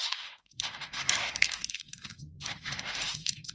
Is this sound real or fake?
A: fake